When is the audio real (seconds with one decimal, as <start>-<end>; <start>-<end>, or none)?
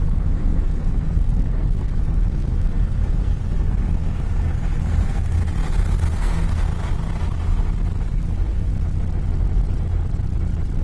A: 5.4-6.1; 6.7-8.1; 8.7-10.8